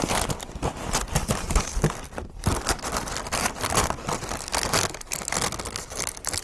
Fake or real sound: real